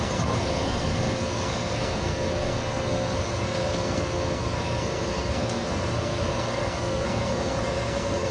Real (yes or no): no